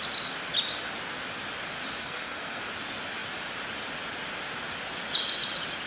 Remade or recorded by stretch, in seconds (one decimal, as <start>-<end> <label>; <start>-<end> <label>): 0.0-2.0 recorded; 2.0-2.6 remade; 2.6-5.9 recorded